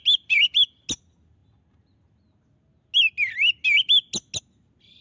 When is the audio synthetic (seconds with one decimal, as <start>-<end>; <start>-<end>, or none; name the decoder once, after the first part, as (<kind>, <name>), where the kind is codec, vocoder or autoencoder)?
none